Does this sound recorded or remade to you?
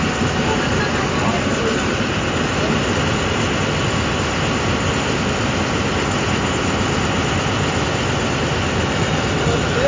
recorded